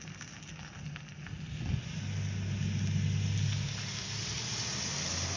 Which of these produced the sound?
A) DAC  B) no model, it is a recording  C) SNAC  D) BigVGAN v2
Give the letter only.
B